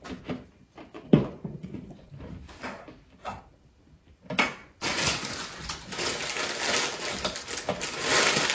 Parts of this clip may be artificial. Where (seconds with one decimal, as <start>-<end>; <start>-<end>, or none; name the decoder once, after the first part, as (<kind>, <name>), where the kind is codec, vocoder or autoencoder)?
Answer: 0.9-2.1 (vocoder, Vocos); 4.6-6.1